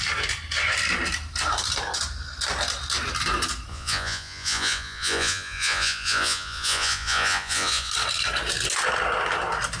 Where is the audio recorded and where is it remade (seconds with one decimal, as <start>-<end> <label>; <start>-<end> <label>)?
0.0-3.7 recorded; 3.7-7.9 remade; 7.9-9.8 recorded